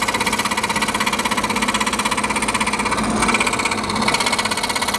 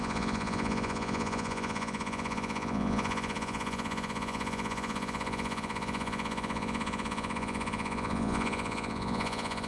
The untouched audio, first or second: first